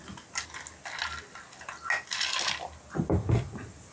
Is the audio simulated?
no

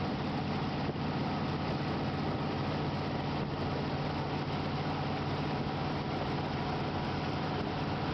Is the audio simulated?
no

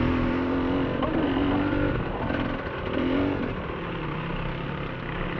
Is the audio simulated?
no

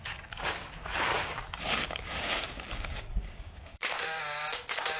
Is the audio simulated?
yes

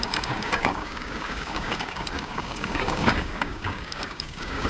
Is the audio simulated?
yes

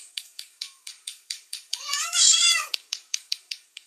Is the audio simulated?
yes